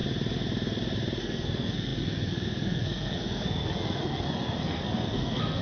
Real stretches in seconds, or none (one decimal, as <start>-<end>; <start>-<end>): 0.0-1.2